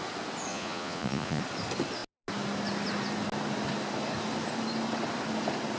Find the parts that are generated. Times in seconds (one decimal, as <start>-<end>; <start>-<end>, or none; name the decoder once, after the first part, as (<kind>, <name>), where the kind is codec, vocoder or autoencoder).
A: 0.5-1.4 (vocoder, Vocos)